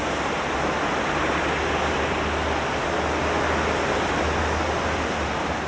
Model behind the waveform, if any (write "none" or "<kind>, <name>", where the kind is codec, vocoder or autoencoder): none